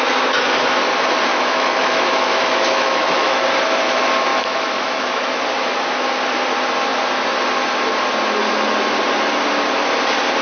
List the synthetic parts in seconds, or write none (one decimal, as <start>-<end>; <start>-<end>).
1.3-3.4; 4.3-5.4

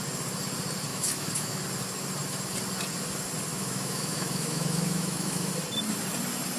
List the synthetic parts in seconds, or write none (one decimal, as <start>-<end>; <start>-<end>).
0.9-1.6; 3.5-5.5

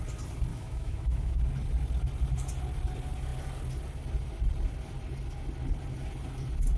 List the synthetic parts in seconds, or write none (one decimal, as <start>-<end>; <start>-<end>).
0.5-1.4

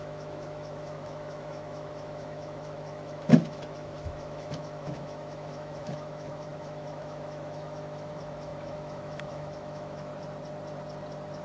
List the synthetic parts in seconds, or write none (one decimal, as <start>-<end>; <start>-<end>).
0.0-10.1

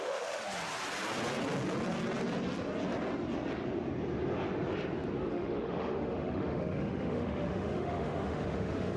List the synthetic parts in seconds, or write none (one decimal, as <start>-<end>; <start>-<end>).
0.0-0.4; 5.3-9.0

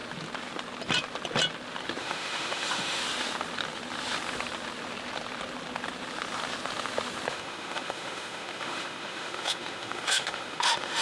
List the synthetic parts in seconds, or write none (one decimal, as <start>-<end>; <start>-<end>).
2.0-3.0; 7.3-11.0